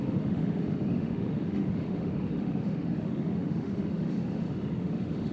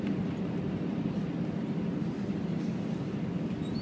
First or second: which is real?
second